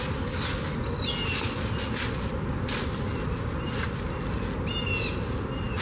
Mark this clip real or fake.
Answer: real